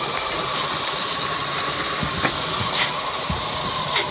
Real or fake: real